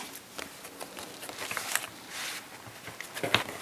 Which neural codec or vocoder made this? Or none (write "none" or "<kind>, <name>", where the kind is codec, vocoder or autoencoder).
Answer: none